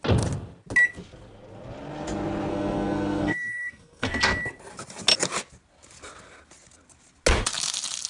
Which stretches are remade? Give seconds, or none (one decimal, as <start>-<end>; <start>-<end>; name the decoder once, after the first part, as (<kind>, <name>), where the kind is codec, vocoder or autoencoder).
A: 2.5-4.2 (codec, SNAC)